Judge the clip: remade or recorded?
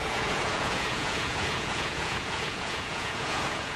remade